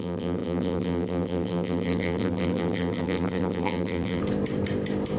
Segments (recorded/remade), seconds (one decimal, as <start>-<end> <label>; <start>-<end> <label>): 0.0-4.2 remade; 4.2-5.2 recorded